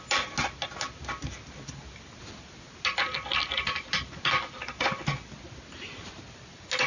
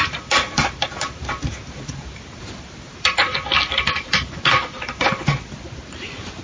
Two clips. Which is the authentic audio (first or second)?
first